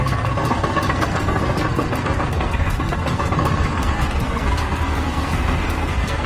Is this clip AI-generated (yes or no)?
yes